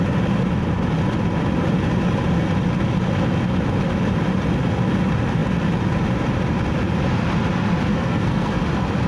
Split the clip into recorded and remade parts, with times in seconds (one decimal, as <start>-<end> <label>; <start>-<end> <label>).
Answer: 0.0-7.9 recorded; 7.9-8.6 remade; 8.6-9.1 recorded